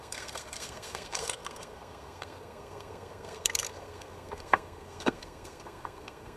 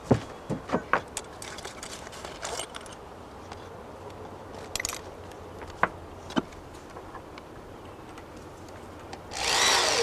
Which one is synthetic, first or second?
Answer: first